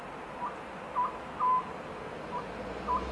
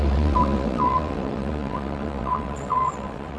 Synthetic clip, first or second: second